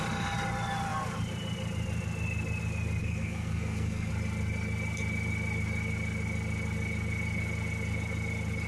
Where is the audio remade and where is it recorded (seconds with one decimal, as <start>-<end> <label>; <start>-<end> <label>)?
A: 0.0-3.0 recorded; 3.0-4.1 remade; 4.1-8.7 recorded